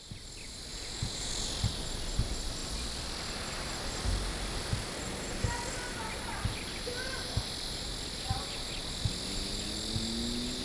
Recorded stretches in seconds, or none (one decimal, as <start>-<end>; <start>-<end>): 0.0-0.7; 1.3-10.6